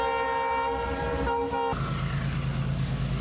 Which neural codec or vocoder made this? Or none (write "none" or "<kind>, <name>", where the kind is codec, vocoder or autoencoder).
none